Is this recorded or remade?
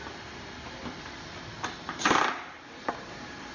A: recorded